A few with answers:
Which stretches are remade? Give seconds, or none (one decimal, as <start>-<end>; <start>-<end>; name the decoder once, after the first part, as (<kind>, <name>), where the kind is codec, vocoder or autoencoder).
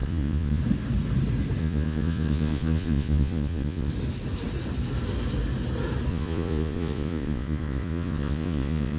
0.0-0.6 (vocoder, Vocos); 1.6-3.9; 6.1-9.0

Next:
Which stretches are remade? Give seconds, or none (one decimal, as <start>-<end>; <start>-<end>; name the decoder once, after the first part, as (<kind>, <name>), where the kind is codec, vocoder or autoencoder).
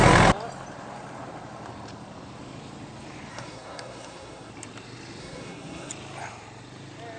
3.3-4.5 (codec, SNAC); 5.2-5.9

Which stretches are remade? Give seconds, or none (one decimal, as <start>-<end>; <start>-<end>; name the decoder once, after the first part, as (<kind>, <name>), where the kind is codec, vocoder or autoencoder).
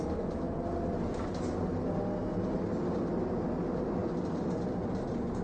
none